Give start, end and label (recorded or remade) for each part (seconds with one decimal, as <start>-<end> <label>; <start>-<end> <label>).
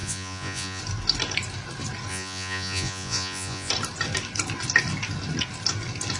0.0-0.8 remade; 0.8-2.1 recorded; 2.1-3.7 remade; 3.7-6.2 recorded